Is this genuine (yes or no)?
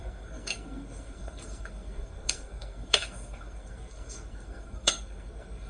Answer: no